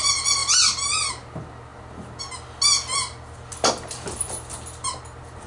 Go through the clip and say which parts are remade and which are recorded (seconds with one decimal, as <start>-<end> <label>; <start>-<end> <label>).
0.0-5.5 recorded